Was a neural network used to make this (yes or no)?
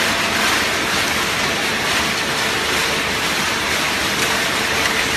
no